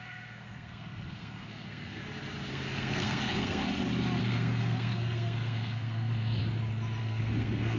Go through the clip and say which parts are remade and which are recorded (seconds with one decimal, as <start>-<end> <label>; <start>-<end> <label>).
0.0-2.0 remade; 2.0-2.5 recorded; 2.5-3.6 remade; 3.6-4.2 recorded; 4.2-6.4 remade; 6.4-7.0 recorded; 7.0-7.8 remade